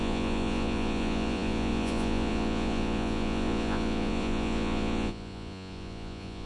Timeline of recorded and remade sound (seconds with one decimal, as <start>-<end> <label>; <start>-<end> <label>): 0.0-6.5 remade

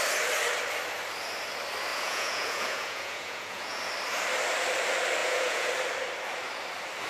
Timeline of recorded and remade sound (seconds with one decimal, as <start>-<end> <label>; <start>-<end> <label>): 0.0-1.9 recorded; 1.9-3.8 remade; 3.8-5.2 recorded; 5.2-5.7 remade; 5.7-7.1 recorded

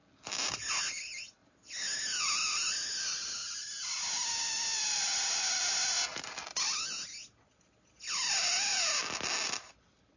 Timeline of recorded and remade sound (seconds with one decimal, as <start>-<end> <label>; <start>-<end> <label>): 0.0-10.2 recorded

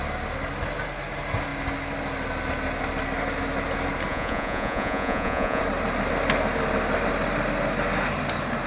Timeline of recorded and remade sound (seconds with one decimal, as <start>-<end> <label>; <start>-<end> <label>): 0.0-4.1 recorded; 4.1-5.6 remade; 5.6-8.7 recorded